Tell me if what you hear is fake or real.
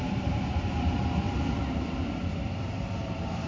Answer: fake